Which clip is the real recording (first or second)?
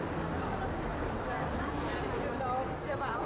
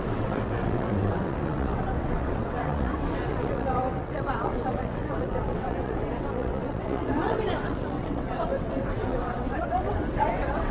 first